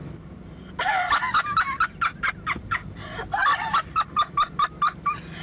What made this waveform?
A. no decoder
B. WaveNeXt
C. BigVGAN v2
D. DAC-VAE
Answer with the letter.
A